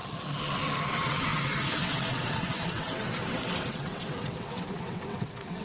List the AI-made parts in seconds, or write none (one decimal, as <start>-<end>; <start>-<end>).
0.9-5.6